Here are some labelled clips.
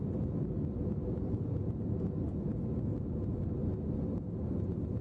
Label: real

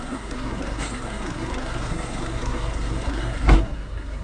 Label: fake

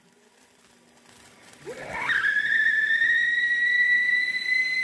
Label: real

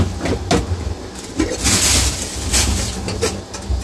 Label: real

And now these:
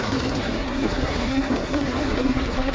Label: fake